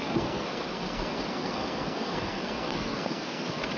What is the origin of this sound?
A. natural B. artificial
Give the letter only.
B